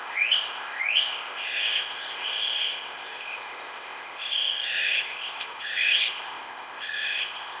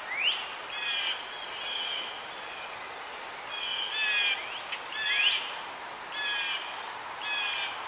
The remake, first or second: first